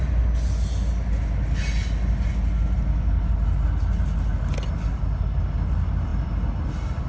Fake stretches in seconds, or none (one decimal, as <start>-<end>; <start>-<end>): none